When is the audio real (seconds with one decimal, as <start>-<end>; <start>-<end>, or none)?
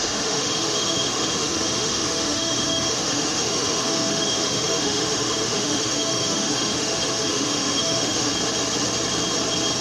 8.3-9.8